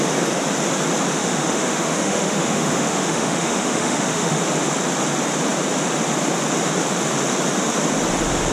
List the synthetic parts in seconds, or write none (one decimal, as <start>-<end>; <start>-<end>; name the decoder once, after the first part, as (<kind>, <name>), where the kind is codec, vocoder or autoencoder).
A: 1.1-4.4 (autoencoder, DAC-VAE)